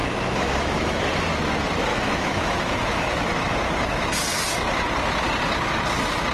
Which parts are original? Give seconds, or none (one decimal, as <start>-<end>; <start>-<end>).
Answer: 1.0-1.9; 3.4-6.3